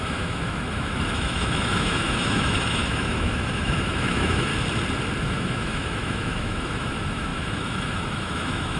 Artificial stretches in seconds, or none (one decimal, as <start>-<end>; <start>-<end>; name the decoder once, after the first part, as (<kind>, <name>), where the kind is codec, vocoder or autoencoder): 0.0-4.5 (autoencoder, DAC-VAE); 5.2-8.8